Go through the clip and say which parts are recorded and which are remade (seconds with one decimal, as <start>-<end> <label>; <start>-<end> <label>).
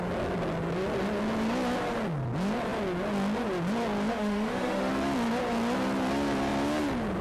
0.0-4.1 recorded; 4.1-4.9 remade; 4.9-7.2 recorded